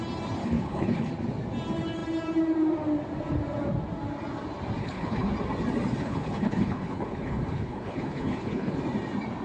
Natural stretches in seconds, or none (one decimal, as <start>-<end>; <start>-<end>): 0.0-0.4; 1.1-4.8; 5.3-6.0; 8.8-9.4